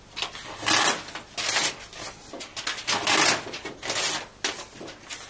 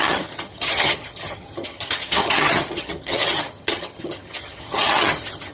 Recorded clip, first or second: first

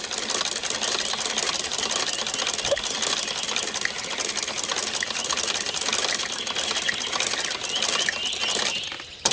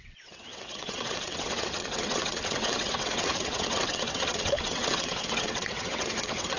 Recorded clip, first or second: first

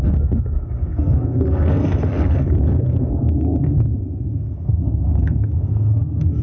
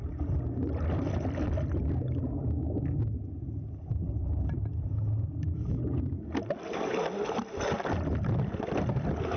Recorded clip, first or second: second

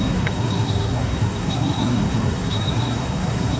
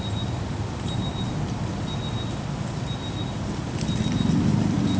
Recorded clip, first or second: second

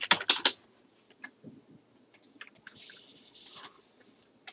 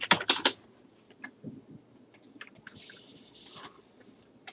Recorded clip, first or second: first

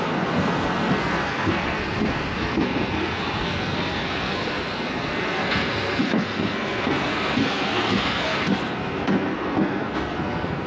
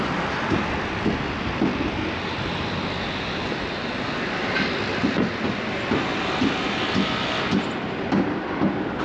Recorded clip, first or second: second